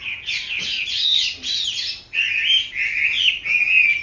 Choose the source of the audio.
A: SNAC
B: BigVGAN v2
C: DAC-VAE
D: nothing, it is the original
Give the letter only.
D